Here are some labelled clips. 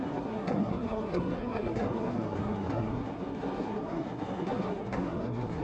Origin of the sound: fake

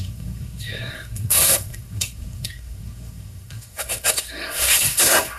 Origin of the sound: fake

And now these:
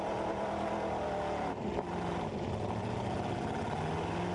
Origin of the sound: real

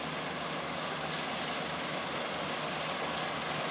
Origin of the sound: real